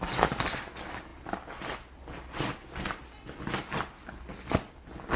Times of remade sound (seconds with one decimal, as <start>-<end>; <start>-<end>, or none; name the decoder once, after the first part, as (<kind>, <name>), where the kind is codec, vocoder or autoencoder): none